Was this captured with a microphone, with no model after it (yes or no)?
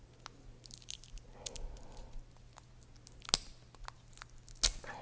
yes